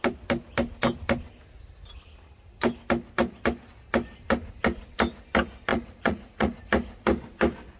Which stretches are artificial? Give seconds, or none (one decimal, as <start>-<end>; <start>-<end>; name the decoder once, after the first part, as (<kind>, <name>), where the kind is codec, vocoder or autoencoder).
5.7-6.6 (vocoder, Vocos)